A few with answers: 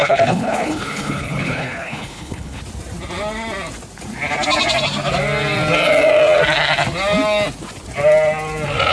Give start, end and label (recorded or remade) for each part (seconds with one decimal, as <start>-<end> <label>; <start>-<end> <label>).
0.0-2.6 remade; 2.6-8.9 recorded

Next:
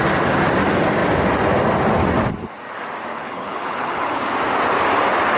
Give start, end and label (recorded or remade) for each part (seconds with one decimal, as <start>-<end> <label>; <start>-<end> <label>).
0.0-3.1 recorded; 3.1-4.2 remade; 4.2-5.4 recorded

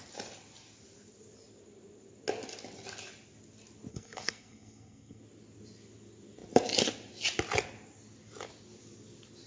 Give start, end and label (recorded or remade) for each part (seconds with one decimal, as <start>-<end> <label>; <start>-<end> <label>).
0.0-3.9 recorded; 3.9-5.2 remade; 5.2-9.5 recorded

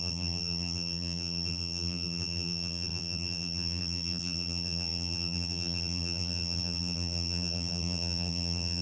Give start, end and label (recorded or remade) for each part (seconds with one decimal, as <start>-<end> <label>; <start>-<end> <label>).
0.0-8.8 remade

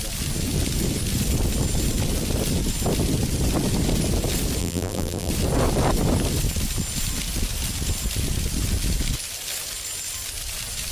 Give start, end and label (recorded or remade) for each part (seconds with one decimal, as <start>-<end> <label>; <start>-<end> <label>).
0.0-4.6 recorded; 4.6-5.3 remade; 5.3-10.9 recorded